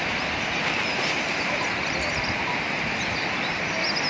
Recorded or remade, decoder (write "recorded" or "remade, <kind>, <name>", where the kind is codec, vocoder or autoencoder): recorded